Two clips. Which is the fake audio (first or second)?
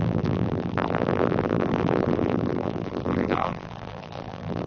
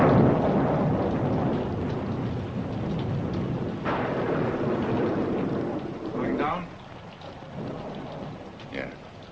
first